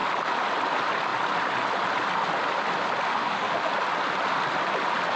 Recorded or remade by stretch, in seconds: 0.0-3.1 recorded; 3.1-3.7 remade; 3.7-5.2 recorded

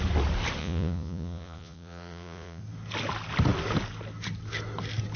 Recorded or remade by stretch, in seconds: 0.0-0.6 recorded; 0.6-2.6 remade; 2.6-5.2 recorded